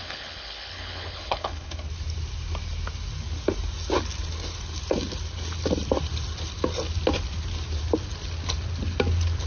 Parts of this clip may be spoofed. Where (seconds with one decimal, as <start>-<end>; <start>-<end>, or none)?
0.0-1.9